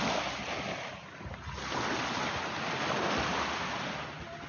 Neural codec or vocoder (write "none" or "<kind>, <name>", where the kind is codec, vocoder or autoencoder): none